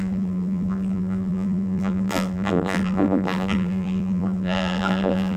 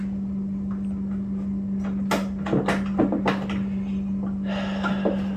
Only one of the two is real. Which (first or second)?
second